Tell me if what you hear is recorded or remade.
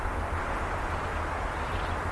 recorded